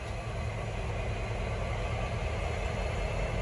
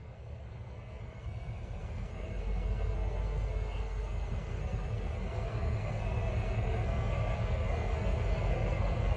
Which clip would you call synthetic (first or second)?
second